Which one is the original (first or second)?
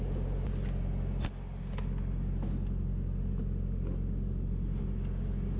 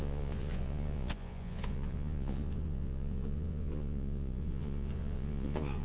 first